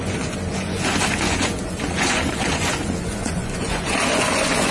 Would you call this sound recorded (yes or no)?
no